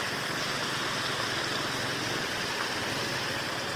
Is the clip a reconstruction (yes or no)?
no